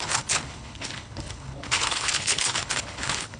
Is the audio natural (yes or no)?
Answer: no